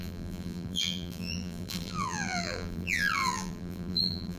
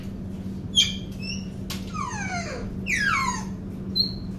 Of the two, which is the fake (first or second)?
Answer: first